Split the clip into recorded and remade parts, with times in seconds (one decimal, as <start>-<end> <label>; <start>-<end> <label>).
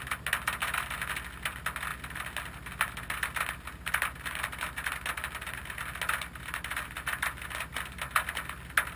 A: 0.0-9.0 recorded